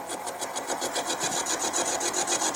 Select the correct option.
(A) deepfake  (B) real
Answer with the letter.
B